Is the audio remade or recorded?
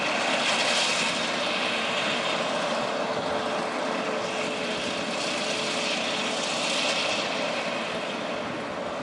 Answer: recorded